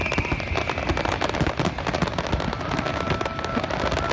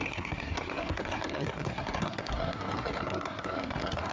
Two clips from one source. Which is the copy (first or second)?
second